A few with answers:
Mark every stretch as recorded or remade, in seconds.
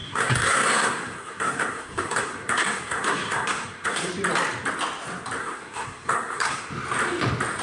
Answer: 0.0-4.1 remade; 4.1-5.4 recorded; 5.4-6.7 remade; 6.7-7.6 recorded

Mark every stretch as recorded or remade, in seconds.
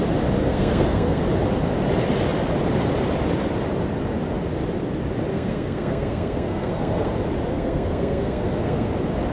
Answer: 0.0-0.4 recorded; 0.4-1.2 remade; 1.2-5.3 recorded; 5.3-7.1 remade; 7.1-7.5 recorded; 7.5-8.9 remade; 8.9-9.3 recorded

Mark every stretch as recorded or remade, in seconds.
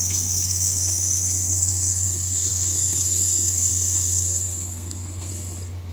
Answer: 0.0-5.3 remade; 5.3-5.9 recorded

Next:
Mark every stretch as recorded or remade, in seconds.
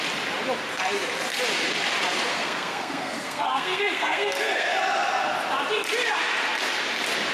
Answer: 0.0-2.3 recorded; 2.3-4.7 remade; 4.7-7.3 recorded